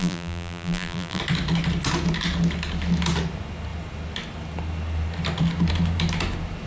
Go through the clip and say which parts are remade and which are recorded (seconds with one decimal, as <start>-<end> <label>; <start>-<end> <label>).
0.0-1.2 remade; 1.2-6.7 recorded